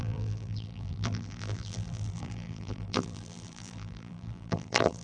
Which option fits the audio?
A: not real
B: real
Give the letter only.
A